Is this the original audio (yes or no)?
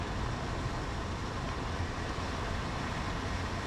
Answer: yes